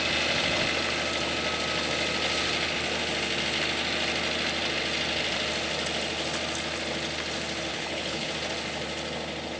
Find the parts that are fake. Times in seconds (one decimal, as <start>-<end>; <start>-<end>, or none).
7.7-8.3